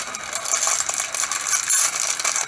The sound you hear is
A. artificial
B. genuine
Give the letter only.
B